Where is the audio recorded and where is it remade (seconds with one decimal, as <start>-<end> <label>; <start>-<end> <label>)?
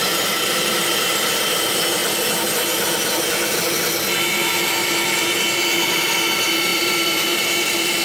0.0-2.0 remade; 2.0-5.9 recorded; 5.9-8.0 remade